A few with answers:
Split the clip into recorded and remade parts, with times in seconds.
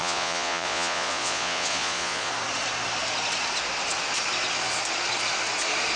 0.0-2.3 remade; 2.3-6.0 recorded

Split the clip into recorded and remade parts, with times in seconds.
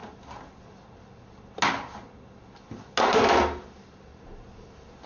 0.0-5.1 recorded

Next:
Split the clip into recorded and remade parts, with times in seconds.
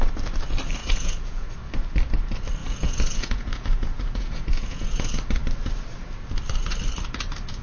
0.0-0.8 recorded; 0.8-1.5 remade; 1.5-2.6 recorded; 2.6-5.1 remade; 5.1-7.6 recorded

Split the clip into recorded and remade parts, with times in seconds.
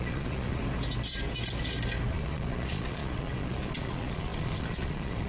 0.0-0.6 remade; 0.6-2.1 recorded; 2.1-5.3 remade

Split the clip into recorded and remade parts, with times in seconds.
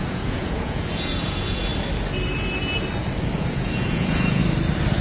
0.0-1.7 remade; 1.7-3.4 recorded; 3.4-4.4 remade; 4.4-5.0 recorded